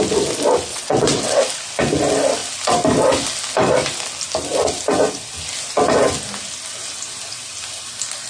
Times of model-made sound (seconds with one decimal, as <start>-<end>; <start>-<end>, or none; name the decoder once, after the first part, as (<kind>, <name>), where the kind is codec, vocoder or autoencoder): 0.7-1.4 (vocoder, WaveNeXt)